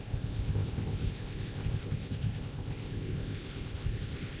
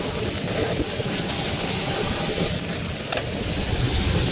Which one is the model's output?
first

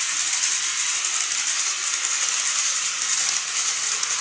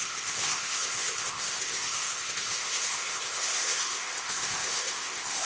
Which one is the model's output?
second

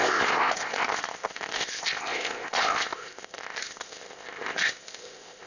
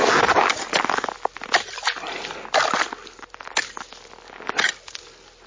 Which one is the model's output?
first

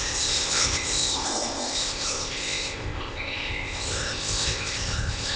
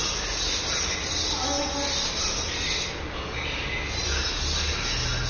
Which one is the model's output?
first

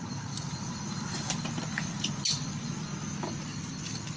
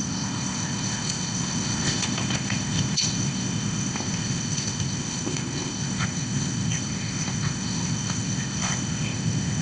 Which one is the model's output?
second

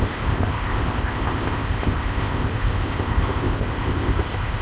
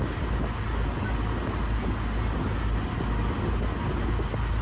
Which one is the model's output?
first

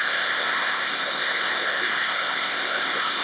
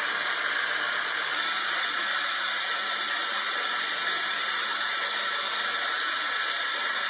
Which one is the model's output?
first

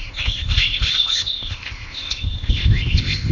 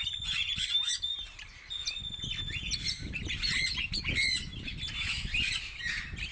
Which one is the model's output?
first